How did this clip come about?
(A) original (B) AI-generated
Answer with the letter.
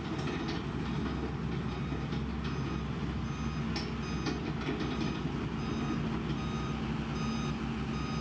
A